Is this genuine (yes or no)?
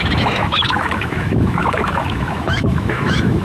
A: no